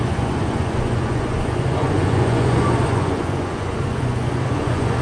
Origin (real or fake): fake